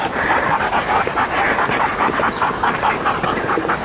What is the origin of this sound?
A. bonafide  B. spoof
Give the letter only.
A